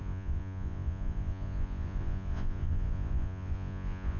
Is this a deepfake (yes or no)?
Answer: yes